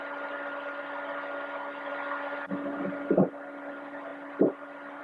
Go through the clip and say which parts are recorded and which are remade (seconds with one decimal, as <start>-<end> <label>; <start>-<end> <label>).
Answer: 0.0-5.0 recorded